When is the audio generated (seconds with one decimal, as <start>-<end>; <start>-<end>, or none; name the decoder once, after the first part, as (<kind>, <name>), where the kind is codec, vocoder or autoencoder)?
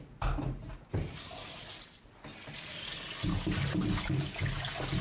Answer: none